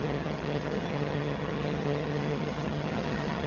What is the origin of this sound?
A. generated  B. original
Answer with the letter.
A